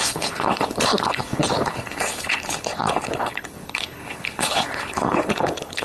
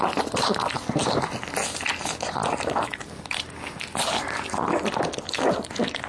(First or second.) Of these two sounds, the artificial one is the first